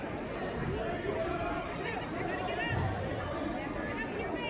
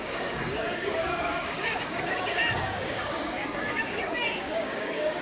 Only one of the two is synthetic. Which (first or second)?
second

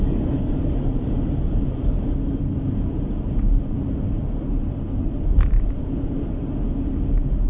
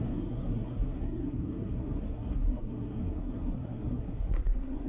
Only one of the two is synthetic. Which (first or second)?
second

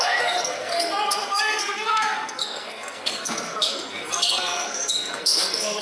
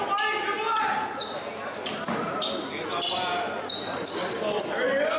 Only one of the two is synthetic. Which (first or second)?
first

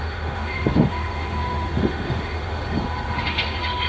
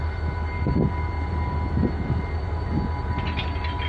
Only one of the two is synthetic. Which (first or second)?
first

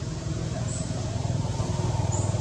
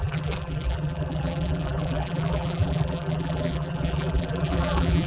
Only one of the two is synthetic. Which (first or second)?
second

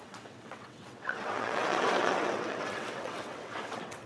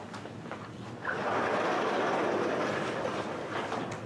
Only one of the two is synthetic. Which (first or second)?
first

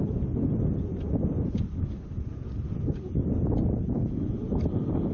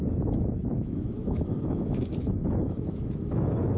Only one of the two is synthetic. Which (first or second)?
second